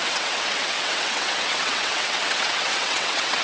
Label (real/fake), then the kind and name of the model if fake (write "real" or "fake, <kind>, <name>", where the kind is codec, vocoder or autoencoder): fake, vocoder, WaveNeXt